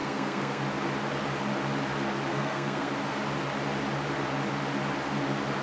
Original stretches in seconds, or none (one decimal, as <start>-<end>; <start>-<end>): 0.6-2.3; 2.9-5.6